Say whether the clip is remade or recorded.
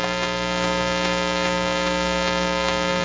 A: remade